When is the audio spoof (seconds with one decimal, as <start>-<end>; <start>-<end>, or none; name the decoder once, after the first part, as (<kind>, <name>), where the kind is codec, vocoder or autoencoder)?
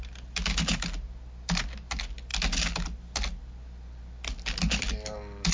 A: none